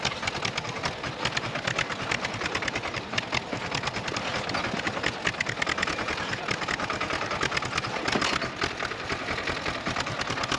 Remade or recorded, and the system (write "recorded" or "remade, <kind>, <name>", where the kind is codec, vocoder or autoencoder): recorded